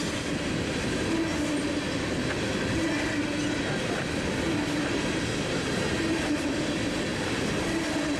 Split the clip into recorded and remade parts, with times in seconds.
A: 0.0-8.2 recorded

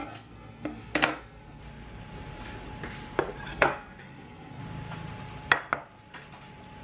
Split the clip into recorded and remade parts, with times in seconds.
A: 0.0-1.6 remade; 1.6-3.5 recorded; 3.5-4.6 remade; 4.6-6.8 recorded

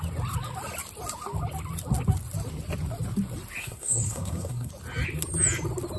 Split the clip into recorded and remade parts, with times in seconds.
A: 0.0-3.6 recorded; 3.6-4.7 remade; 4.7-6.0 recorded

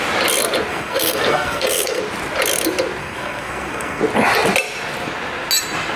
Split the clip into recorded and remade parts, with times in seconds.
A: 0.0-0.7 recorded; 0.7-2.0 remade; 2.0-3.0 recorded; 3.0-4.0 remade; 4.0-6.0 recorded

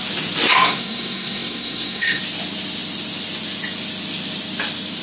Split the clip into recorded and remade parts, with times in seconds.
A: 0.0-0.5 recorded; 0.5-2.2 remade; 2.2-5.0 recorded

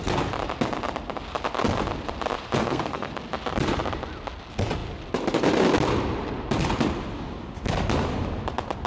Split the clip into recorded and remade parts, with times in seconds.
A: 0.0-2.6 recorded; 2.6-3.1 remade; 3.1-8.9 recorded

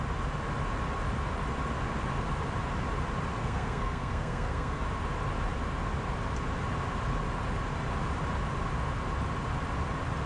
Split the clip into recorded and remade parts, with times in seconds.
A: 0.0-3.4 recorded; 3.4-4.8 remade; 4.8-10.3 recorded